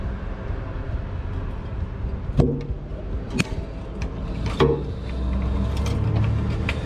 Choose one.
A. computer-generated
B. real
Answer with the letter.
B